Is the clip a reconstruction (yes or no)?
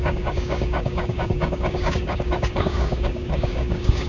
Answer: yes